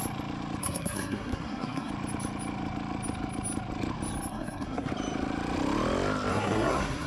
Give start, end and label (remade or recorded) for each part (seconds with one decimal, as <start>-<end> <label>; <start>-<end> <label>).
0.0-0.6 recorded; 0.6-1.9 remade; 1.9-4.3 recorded; 4.3-4.9 remade; 4.9-6.3 recorded; 6.3-7.1 remade